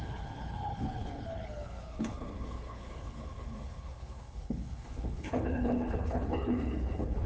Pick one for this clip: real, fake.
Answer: fake